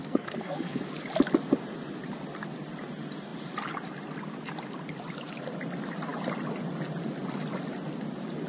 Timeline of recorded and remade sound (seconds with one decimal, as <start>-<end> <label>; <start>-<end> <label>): 0.0-0.8 remade; 0.8-8.5 recorded